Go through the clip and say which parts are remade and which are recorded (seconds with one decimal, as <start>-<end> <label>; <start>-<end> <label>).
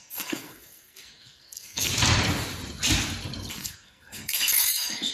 0.0-1.9 remade; 1.9-3.5 recorded; 3.5-5.1 remade